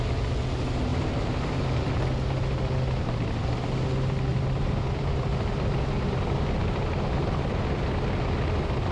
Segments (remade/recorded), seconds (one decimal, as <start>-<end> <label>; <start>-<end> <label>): 0.0-0.9 recorded; 0.9-1.9 remade; 1.9-4.3 recorded; 4.3-7.9 remade; 7.9-8.9 recorded